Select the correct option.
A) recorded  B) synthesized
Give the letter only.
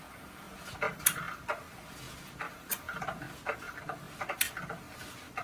A